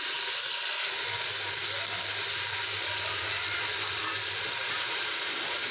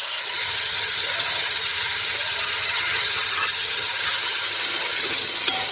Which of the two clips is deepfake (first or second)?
second